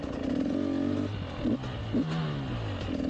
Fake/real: real